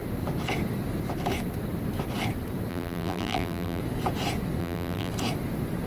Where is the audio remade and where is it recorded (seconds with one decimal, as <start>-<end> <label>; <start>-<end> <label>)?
0.0-2.7 recorded; 2.7-3.8 remade; 3.8-4.6 recorded; 4.6-5.1 remade; 5.1-5.9 recorded